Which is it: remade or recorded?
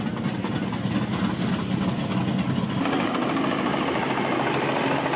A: recorded